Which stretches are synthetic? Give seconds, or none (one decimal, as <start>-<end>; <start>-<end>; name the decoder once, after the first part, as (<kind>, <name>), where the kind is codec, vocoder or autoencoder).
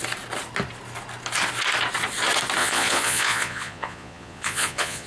2.6-5.1 (vocoder, Vocos)